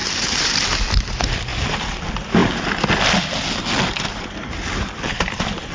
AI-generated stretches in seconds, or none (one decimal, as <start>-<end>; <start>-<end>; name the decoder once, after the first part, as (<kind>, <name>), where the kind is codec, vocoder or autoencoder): 0.0-0.6 (vocoder, BigVGAN v2); 1.5-2.0